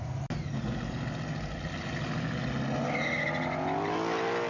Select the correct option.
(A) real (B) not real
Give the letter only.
A